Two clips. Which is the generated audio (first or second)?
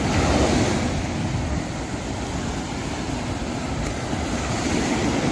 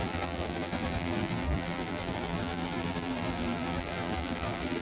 second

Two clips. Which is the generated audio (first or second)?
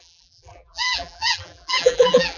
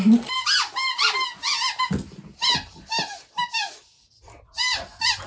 first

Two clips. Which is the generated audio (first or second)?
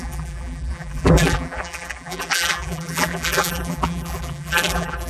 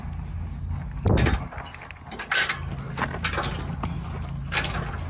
first